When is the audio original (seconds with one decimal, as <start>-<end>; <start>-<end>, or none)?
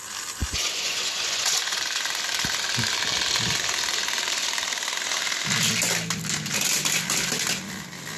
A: 0.0-0.4; 1.8-8.2